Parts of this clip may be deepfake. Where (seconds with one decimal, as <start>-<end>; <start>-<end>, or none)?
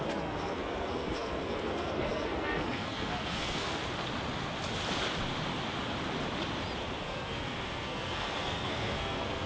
0.0-3.8; 7.0-9.5